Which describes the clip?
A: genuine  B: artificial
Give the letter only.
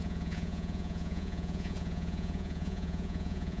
B